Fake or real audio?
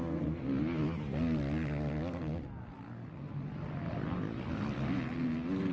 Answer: real